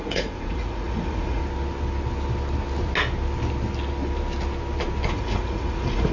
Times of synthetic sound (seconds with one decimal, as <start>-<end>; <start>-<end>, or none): 0.0-1.4; 5.1-6.1